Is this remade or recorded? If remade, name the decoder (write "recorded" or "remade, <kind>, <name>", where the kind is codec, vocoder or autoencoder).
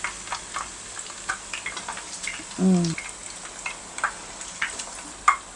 recorded